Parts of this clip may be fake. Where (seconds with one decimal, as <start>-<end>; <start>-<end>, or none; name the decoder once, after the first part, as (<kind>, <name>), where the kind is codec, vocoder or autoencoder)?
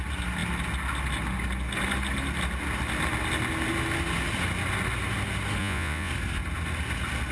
5.6-6.1 (vocoder, Vocos)